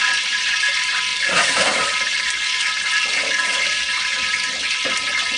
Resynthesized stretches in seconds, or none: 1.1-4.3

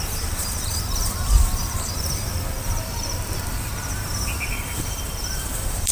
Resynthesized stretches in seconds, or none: 0.0-3.7; 4.5-5.9

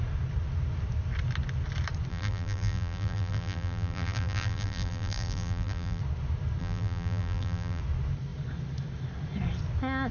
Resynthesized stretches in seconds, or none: 2.1-6.0; 6.6-7.8

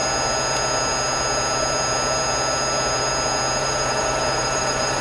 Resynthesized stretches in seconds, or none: 3.6-5.0

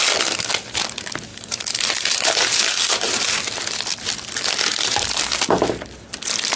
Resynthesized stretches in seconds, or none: 1.3-3.4